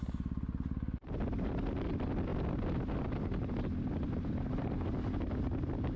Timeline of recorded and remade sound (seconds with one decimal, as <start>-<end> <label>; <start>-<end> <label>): 0.0-6.0 recorded